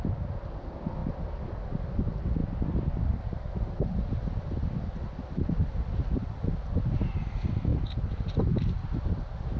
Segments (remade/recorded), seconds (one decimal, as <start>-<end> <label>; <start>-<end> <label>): 0.0-9.6 recorded